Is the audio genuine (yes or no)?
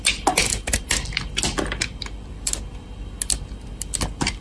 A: yes